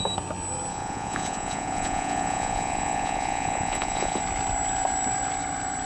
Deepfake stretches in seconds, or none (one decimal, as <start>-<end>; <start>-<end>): 0.7-4.2